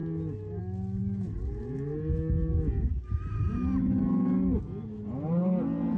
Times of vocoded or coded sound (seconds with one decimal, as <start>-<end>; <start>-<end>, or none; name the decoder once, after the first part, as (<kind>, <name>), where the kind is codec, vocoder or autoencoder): none